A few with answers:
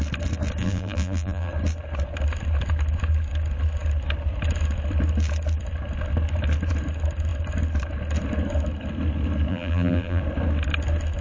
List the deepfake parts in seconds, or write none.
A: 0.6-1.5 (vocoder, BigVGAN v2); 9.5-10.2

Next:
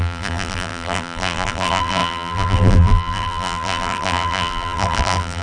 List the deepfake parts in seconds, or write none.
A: 0.0-5.4 (vocoder, BigVGAN v2)

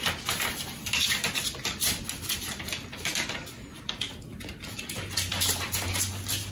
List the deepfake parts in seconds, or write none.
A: none

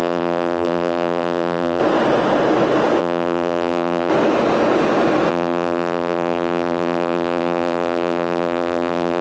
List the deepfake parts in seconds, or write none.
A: 0.0-1.8 (vocoder, BigVGAN v2); 3.0-4.1; 5.3-9.2

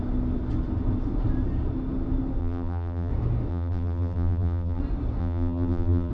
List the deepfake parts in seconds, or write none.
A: 2.4-3.1 (vocoder, BigVGAN v2); 3.5-4.8; 5.2-6.1